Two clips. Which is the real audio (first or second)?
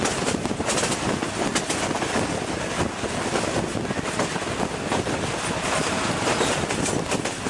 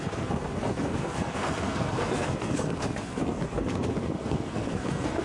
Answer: first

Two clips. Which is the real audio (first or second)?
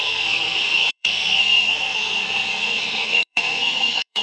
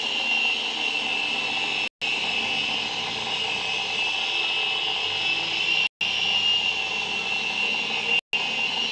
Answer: second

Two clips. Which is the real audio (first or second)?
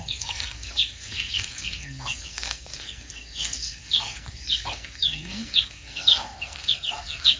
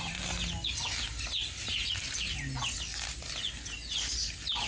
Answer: second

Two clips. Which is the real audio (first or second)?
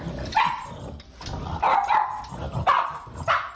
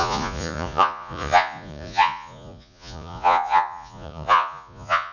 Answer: first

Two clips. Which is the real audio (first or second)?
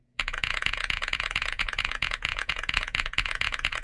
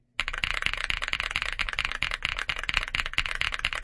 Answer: second